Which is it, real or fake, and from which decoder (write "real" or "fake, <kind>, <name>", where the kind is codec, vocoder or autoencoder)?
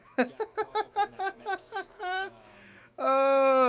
fake, autoencoder, DAC-VAE